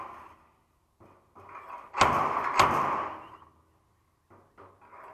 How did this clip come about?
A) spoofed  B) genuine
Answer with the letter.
B